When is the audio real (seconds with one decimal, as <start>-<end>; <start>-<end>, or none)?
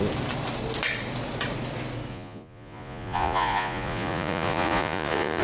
0.0-2.1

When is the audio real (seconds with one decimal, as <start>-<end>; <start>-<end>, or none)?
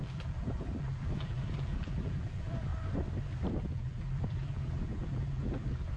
2.7-3.5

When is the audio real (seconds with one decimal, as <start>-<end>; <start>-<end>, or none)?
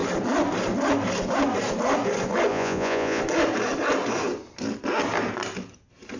0.0-2.5; 3.2-6.2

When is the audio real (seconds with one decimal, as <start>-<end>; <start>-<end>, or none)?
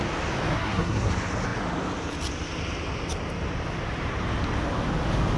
0.0-0.5; 1.1-5.4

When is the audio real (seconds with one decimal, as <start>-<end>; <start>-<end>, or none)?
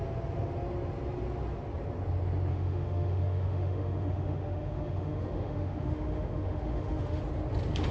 0.0-2.5; 7.2-7.9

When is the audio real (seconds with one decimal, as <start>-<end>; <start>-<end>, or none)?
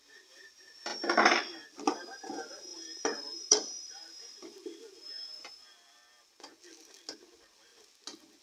0.0-0.9; 2.3-2.7; 5.5-8.4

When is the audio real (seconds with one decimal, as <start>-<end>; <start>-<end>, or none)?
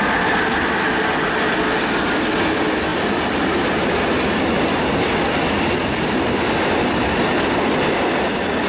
0.0-8.7